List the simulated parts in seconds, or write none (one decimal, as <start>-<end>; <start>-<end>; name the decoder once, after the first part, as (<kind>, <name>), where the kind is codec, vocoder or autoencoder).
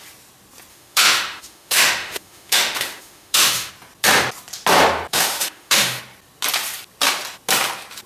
0.7-3.7 (autoencoder, DAC-VAE); 5.1-6.0